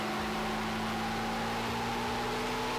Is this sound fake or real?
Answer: real